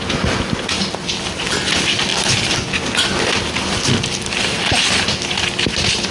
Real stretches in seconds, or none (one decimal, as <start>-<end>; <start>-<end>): 0.0-6.1